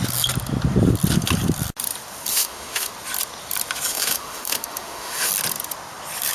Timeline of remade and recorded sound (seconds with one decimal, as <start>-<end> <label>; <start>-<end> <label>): 0.0-2.3 recorded; 2.3-2.9 remade; 2.9-3.9 recorded; 3.9-5.3 remade; 5.3-6.3 recorded